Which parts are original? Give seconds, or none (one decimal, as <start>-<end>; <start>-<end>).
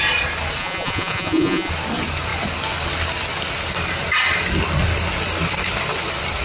0.0-0.6; 1.7-6.4